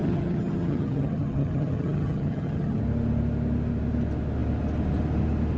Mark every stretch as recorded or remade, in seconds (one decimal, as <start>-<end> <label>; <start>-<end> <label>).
0.0-2.8 remade; 2.8-5.6 recorded

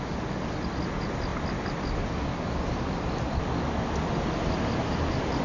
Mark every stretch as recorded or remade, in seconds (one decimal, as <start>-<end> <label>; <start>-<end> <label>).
0.0-5.4 recorded

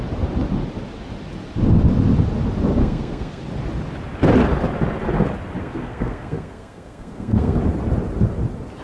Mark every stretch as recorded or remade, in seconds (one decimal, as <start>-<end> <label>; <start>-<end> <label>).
0.0-2.8 recorded; 2.8-3.4 remade; 3.4-5.6 recorded; 5.6-7.6 remade; 7.6-8.8 recorded